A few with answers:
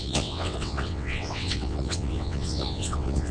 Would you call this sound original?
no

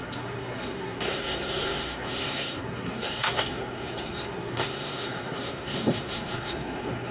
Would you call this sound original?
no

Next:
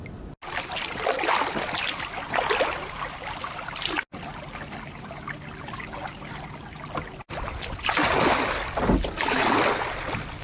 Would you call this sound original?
yes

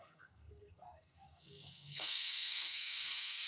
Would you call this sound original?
no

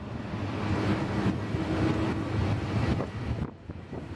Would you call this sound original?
yes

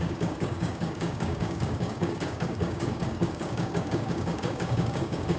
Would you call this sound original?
no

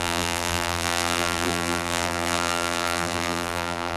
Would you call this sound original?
no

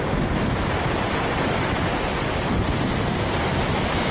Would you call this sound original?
yes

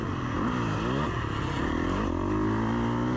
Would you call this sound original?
yes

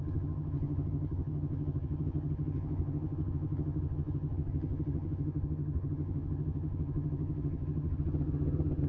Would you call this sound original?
no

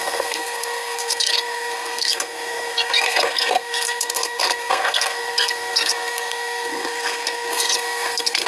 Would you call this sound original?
no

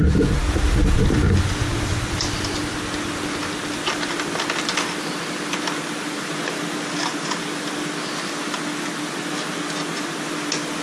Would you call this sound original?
yes